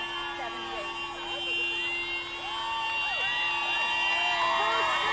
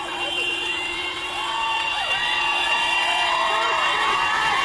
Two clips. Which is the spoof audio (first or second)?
second